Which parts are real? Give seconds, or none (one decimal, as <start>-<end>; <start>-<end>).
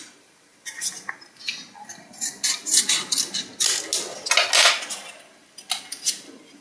0.0-6.6